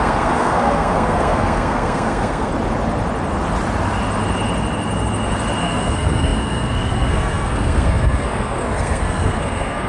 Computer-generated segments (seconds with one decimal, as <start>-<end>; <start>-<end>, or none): 0.0-2.5; 5.6-9.9